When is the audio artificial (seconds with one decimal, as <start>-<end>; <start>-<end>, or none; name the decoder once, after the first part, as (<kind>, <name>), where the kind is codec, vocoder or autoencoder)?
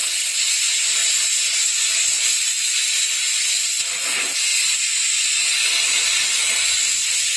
none